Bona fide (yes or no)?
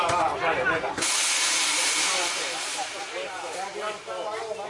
yes